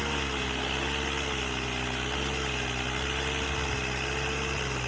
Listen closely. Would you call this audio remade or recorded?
recorded